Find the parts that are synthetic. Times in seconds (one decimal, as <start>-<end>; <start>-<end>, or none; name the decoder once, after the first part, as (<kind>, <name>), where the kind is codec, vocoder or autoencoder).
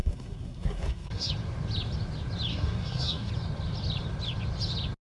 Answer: 0.0-1.3 (codec, SNAC); 2.5-3.3